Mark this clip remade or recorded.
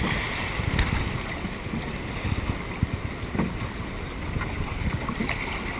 recorded